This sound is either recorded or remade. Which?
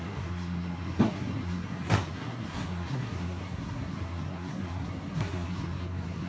remade